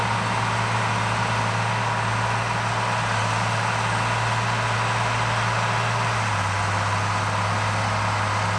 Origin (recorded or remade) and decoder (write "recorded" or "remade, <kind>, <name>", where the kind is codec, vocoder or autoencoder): recorded